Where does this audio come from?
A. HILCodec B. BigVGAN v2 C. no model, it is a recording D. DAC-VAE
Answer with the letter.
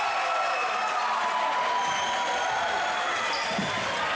C